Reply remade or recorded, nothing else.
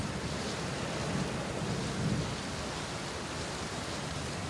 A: recorded